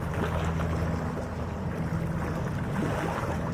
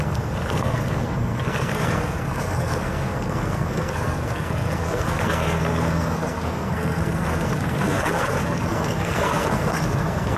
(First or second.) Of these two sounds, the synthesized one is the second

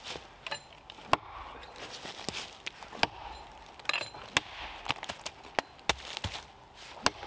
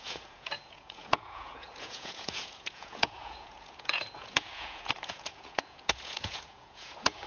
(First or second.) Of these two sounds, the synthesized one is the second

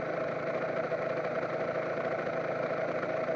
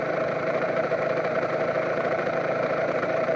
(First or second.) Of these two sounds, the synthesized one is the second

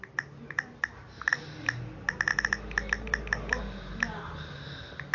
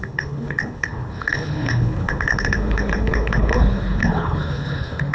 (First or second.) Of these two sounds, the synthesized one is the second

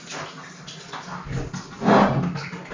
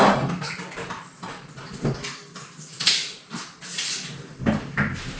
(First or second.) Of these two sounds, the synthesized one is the second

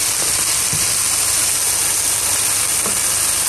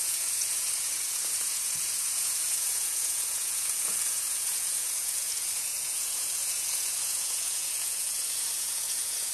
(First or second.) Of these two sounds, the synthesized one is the second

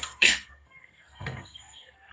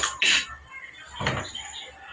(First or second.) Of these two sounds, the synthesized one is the first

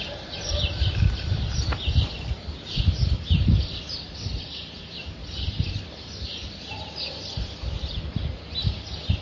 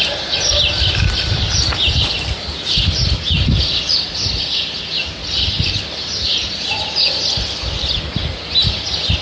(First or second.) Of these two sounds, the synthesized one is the first